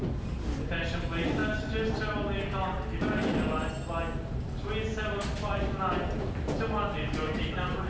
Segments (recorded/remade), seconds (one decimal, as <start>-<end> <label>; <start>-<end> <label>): 0.0-7.9 recorded